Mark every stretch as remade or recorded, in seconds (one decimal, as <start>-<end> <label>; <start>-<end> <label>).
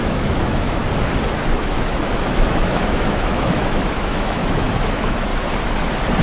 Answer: 0.0-0.8 remade; 0.8-1.6 recorded; 1.6-5.3 remade; 5.3-6.2 recorded